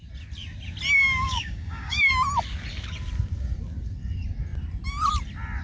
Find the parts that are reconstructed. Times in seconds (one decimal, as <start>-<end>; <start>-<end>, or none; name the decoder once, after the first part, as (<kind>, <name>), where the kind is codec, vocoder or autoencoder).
1.0-2.1 (codec, DAC)